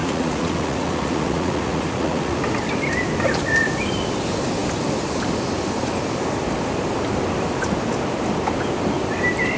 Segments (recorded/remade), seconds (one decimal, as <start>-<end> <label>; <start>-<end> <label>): 0.0-2.4 remade; 2.4-9.6 recorded